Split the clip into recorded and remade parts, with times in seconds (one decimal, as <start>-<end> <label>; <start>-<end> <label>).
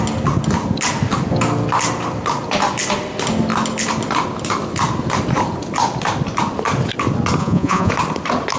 0.0-7.4 recorded; 7.4-7.9 remade; 7.9-8.6 recorded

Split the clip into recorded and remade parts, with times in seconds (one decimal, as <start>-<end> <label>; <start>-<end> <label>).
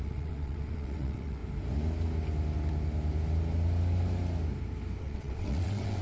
0.0-1.4 remade; 1.4-5.0 recorded; 5.0-6.0 remade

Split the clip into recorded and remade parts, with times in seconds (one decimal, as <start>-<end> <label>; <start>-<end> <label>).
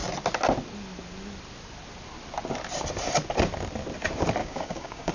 0.0-4.4 recorded; 4.4-5.1 remade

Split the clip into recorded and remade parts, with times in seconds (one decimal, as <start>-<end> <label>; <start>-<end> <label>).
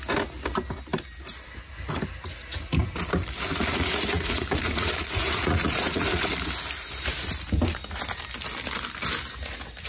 0.0-3.5 recorded; 3.5-6.3 remade; 6.3-9.9 recorded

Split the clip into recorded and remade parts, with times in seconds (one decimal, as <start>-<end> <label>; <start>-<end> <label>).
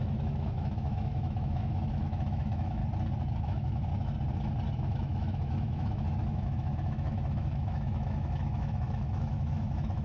0.0-2.8 remade; 2.8-3.4 recorded; 3.4-3.9 remade; 3.9-4.8 recorded; 4.8-10.0 remade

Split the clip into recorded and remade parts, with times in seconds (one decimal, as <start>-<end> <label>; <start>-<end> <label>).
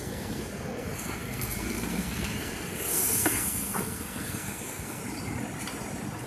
0.0-5.0 remade; 5.0-6.3 recorded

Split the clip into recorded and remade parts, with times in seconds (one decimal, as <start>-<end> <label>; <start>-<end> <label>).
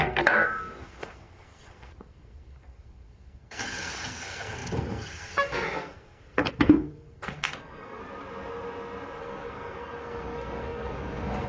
0.0-8.0 remade; 8.0-9.2 recorded; 9.2-11.5 remade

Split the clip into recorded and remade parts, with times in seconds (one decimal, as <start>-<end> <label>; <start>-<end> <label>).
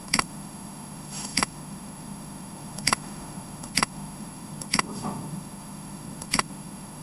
0.0-7.0 remade